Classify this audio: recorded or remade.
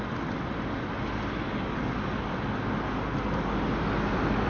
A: recorded